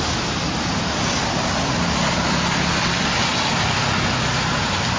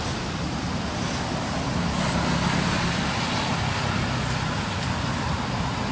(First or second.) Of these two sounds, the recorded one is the first